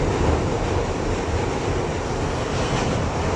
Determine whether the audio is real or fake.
real